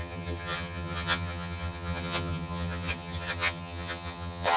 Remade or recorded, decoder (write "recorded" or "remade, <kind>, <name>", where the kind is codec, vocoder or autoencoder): remade, vocoder, HiFi-GAN